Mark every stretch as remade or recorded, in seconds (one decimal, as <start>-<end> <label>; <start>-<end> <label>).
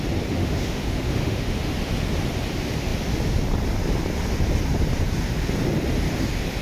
0.0-0.4 recorded; 0.4-1.7 remade; 1.7-6.6 recorded